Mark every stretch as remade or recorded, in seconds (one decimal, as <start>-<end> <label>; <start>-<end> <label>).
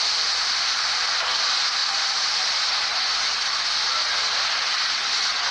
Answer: 0.0-1.8 recorded; 1.8-3.0 remade; 3.0-5.5 recorded